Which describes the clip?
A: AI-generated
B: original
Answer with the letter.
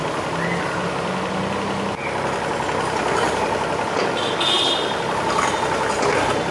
B